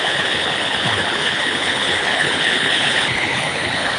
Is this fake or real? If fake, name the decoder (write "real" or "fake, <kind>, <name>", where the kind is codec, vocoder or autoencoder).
fake, codec, HILCodec